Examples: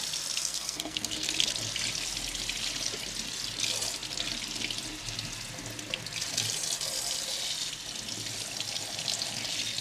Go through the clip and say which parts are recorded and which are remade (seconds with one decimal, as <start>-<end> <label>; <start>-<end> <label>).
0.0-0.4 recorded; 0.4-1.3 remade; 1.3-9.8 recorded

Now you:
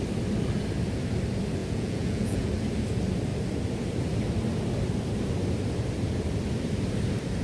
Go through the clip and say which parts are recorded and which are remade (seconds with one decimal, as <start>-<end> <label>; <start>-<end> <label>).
0.0-1.6 recorded; 1.6-2.5 remade; 2.5-7.4 recorded

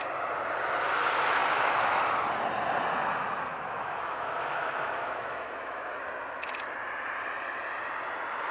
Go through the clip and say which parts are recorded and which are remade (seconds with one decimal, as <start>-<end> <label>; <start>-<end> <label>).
0.0-1.4 recorded; 1.4-2.0 remade; 2.0-3.5 recorded; 3.5-6.0 remade; 6.0-8.5 recorded

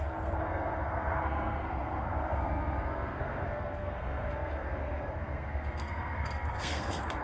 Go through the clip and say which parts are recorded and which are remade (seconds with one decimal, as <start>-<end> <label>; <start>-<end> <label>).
0.0-7.2 remade